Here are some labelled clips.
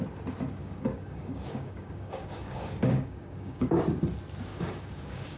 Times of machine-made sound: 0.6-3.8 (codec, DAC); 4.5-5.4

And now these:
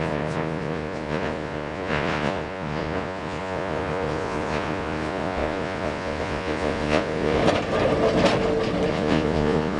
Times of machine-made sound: 0.0-7.4 (vocoder, Vocos); 8.9-9.8

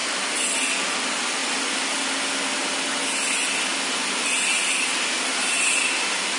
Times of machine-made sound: none

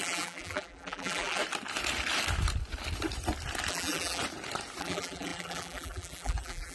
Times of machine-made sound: 0.0-1.4 (vocoder, BigVGAN v2); 3.7-4.2; 4.8-6.7

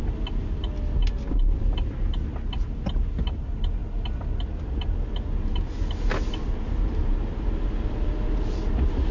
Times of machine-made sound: none

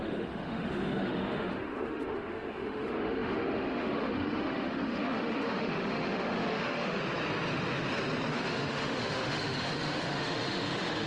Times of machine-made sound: 0.0-7.0 (autoencoder, DAC-VAE); 8.3-11.1